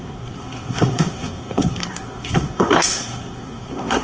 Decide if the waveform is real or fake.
fake